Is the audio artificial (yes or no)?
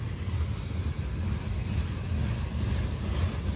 no